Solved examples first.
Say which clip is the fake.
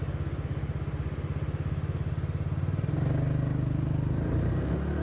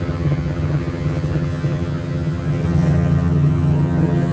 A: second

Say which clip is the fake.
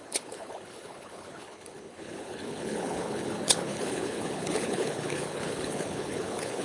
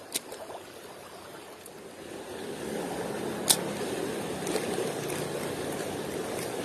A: first